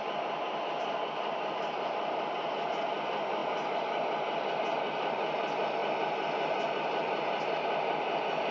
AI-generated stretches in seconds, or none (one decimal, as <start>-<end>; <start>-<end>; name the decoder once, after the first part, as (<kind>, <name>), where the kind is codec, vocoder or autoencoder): none